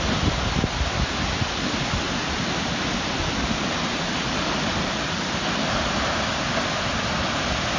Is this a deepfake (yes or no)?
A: no